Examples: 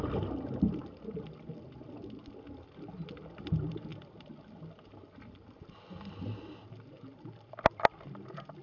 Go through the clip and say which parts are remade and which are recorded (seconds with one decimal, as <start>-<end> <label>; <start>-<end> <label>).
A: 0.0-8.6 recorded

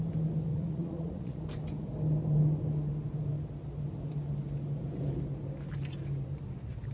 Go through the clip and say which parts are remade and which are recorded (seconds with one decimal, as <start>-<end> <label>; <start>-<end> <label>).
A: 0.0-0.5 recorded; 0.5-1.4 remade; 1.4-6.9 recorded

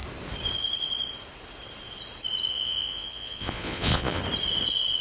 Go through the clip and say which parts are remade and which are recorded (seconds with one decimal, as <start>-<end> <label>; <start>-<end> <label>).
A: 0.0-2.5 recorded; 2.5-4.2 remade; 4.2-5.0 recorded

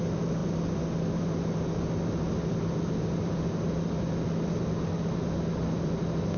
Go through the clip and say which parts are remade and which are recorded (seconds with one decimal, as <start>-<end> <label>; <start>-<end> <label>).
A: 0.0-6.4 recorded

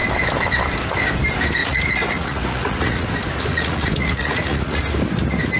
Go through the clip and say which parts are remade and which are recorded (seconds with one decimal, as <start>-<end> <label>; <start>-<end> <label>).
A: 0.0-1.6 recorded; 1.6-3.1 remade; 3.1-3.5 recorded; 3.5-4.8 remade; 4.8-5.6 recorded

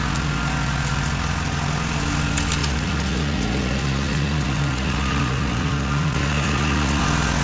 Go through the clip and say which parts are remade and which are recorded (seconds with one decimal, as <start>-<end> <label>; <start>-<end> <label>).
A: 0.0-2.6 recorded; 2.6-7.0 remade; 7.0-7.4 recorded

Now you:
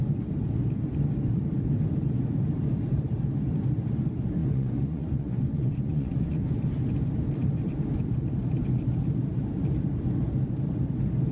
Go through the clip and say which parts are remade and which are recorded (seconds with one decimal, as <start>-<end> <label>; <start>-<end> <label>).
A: 0.0-4.4 recorded; 4.4-6.6 remade; 6.6-11.3 recorded

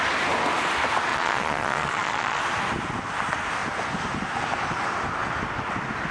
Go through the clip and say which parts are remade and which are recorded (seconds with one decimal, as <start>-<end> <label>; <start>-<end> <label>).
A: 0.0-1.1 recorded; 1.1-2.4 remade; 2.4-6.1 recorded